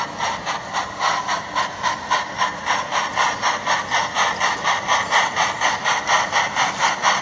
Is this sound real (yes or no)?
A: yes